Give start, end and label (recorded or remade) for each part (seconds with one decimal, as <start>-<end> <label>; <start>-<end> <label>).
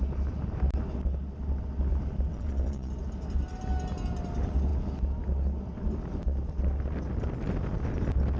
0.0-2.3 recorded; 2.3-2.9 remade; 2.9-8.4 recorded